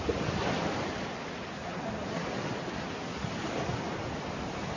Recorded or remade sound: recorded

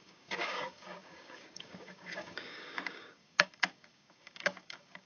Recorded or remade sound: remade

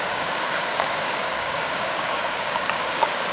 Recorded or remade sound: remade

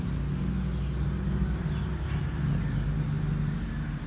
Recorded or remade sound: recorded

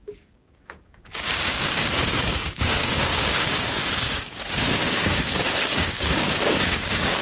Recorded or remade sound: remade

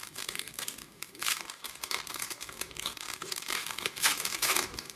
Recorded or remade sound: remade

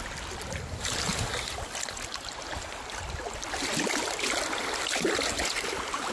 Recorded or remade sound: recorded